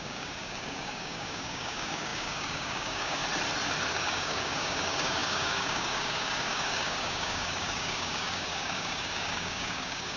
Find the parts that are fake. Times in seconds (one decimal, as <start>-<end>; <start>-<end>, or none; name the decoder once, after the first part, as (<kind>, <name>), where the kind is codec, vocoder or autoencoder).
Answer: 0.0-3.2 (codec, DAC); 3.9-10.2